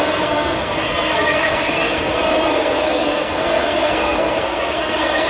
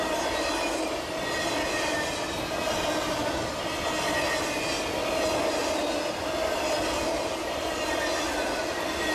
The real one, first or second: second